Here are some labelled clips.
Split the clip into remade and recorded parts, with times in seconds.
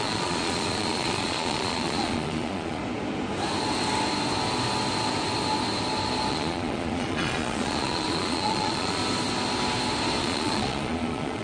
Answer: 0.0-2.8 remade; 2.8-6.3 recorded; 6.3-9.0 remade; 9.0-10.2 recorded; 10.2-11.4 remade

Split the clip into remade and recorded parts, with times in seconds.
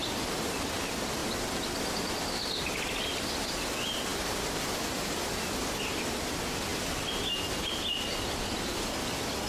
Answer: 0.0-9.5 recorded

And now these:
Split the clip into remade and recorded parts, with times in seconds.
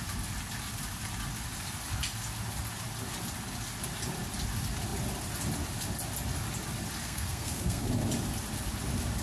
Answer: 0.0-7.0 recorded; 7.0-7.9 remade; 7.9-9.2 recorded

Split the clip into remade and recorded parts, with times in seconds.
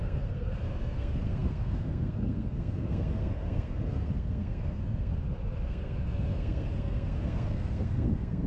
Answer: 0.0-5.1 remade; 5.1-5.7 recorded; 5.7-8.5 remade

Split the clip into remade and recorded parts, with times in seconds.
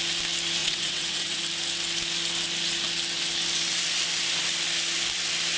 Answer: 0.0-0.6 recorded; 0.6-1.4 remade; 1.4-5.6 recorded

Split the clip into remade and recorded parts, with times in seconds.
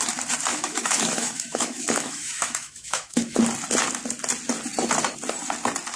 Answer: 0.0-0.5 recorded; 0.5-3.4 remade; 3.4-6.0 recorded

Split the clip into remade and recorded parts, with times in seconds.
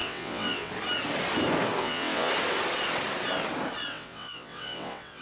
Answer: 0.0-0.7 remade; 0.7-1.8 recorded; 1.8-2.3 remade; 2.3-3.9 recorded; 3.9-5.2 remade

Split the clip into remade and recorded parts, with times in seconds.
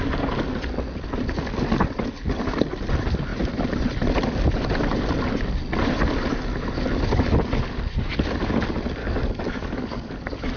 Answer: 0.0-9.0 recorded; 9.0-10.1 remade; 10.1-10.6 recorded